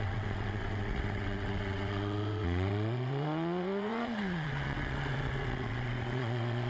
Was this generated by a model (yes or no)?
yes